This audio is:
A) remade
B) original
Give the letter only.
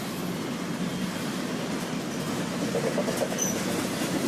B